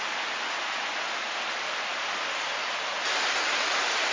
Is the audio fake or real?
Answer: real